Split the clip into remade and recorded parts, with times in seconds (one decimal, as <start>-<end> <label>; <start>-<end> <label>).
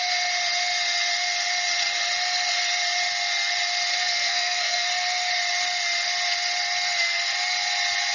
0.0-4.0 recorded; 4.0-4.9 remade; 4.9-8.1 recorded